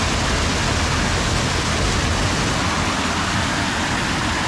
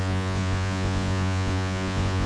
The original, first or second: first